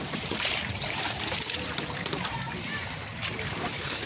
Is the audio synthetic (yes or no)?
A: yes